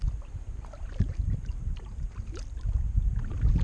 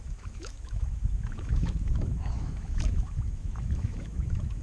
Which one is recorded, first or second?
first